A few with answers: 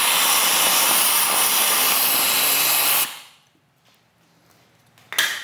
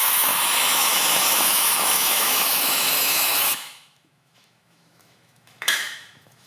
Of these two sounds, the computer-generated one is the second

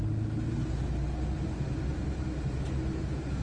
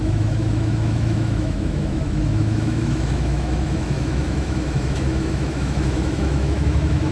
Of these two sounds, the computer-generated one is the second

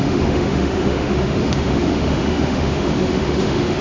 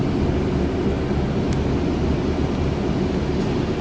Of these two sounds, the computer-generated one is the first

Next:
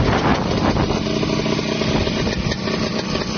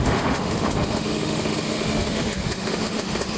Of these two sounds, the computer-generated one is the second